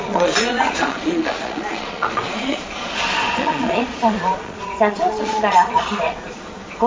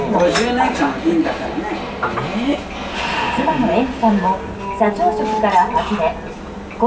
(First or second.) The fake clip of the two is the first